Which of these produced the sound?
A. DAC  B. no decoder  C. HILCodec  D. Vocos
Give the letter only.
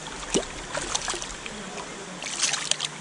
B